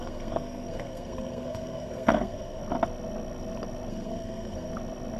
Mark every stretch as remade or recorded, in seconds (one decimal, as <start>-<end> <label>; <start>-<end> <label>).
0.0-2.6 remade; 2.6-3.9 recorded; 3.9-4.7 remade; 4.7-5.2 recorded